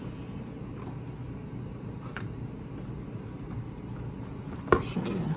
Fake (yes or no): no